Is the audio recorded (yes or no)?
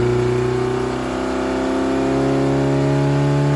yes